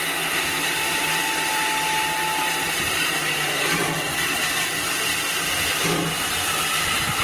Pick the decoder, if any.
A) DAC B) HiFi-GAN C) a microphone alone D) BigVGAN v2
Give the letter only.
C